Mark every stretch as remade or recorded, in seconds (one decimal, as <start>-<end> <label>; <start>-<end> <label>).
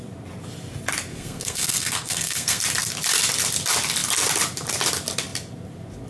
0.0-1.1 recorded; 1.1-2.6 remade; 2.6-6.1 recorded